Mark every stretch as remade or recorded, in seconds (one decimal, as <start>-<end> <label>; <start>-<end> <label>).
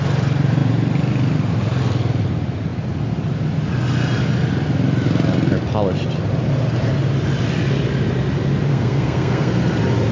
0.0-8.7 recorded; 8.7-9.5 remade; 9.5-10.1 recorded